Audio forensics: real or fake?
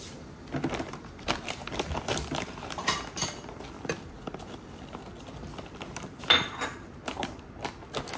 real